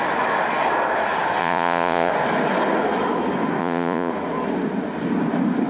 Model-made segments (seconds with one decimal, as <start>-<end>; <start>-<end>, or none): 1.4-2.1; 3.6-4.1

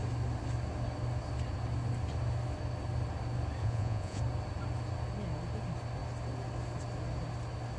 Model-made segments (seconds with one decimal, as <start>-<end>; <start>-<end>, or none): 3.6-4.2

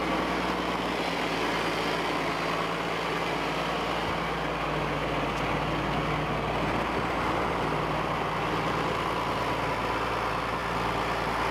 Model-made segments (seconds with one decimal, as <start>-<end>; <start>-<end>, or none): none